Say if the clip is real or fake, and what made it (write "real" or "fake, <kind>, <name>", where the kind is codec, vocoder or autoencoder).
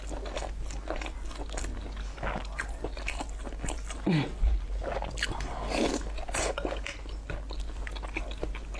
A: real